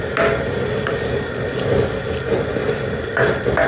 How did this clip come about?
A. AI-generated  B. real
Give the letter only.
B